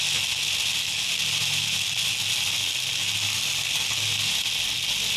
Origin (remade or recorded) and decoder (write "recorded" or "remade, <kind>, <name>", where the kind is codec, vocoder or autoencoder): recorded